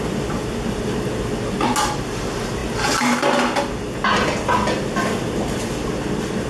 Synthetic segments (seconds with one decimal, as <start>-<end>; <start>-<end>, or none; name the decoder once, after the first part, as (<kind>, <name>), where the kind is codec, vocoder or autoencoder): none